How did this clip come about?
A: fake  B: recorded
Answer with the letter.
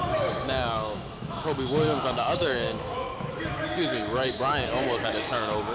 A